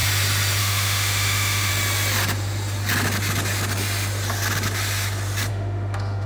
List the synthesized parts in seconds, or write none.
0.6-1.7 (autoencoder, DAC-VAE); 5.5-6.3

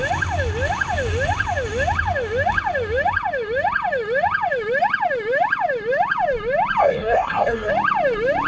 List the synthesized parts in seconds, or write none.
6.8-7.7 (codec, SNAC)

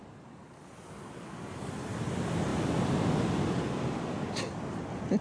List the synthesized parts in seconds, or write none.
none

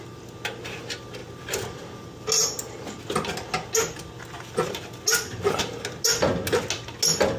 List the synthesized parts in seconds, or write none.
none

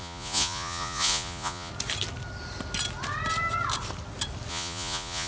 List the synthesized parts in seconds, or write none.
0.0-1.7 (vocoder, Vocos); 4.5-5.3